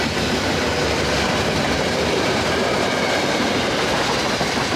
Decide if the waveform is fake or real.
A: real